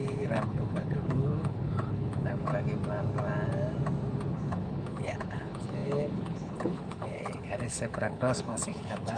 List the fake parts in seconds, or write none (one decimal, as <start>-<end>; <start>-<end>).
0.0-2.5; 4.3-9.2